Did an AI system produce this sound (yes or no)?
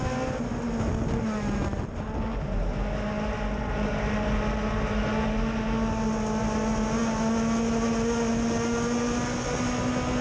no